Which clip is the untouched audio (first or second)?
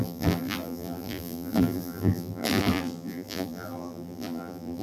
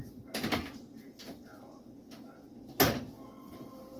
second